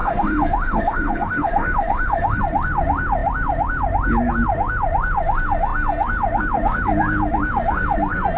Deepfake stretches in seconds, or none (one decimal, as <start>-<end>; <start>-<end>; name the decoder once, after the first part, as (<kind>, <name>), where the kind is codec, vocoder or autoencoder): 0.0-2.4 (autoencoder, DAC-VAE)